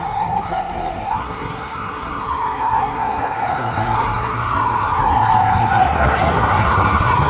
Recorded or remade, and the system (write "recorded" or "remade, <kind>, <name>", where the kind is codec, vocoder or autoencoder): remade, codec, SNAC